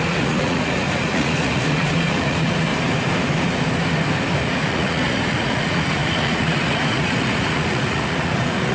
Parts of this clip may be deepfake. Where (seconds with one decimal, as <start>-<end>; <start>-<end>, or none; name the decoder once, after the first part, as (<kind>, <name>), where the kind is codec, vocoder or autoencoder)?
0.0-2.7 (vocoder, Vocos); 4.4-8.7